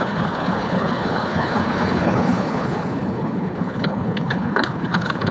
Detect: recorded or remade remade